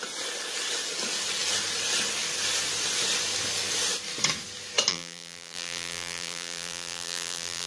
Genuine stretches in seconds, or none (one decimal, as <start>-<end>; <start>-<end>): 0.0-4.9